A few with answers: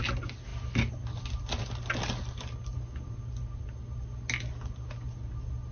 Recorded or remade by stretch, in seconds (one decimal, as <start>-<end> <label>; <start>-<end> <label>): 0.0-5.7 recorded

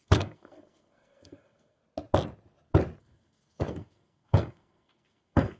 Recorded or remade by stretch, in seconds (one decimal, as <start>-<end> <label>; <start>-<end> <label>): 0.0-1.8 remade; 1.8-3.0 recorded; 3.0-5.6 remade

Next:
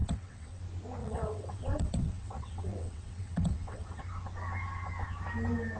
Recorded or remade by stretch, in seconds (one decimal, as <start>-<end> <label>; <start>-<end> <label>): 0.0-0.6 remade; 0.6-1.0 recorded; 1.0-4.0 remade; 4.0-5.8 recorded